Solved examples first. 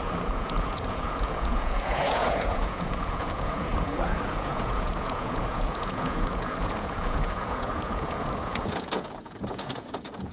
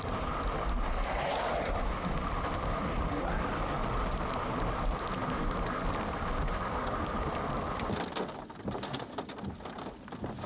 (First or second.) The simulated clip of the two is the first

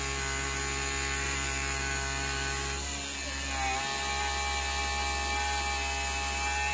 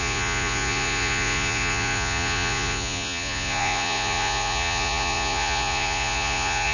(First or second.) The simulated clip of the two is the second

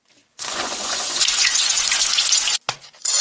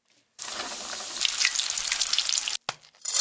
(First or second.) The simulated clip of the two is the first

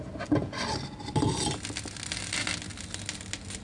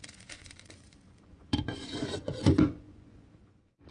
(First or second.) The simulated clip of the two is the second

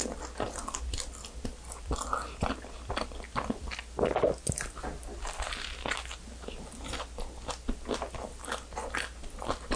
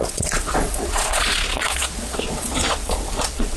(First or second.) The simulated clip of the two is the second